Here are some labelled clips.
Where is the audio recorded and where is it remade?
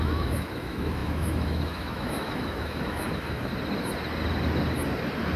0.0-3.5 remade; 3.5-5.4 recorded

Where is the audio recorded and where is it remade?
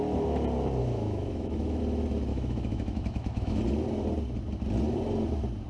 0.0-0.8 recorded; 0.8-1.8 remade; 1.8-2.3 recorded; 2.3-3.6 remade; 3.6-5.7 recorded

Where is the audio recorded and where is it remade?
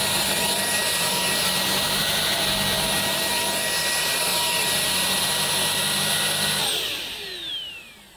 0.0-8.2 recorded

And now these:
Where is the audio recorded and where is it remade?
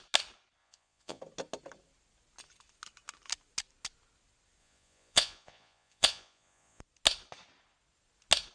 0.0-0.6 recorded; 0.6-1.2 remade; 1.2-4.6 recorded; 4.6-6.8 remade; 6.8-8.5 recorded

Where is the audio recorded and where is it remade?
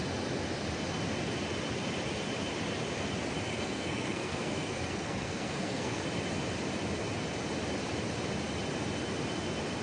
0.0-3.5 recorded; 3.5-6.0 remade; 6.0-9.8 recorded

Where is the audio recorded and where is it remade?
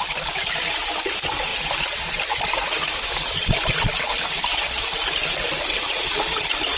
0.0-6.8 recorded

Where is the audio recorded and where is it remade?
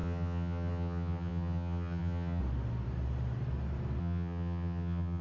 0.0-2.4 remade; 2.4-4.0 recorded; 4.0-5.2 remade